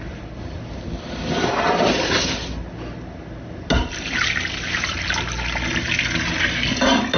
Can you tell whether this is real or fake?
real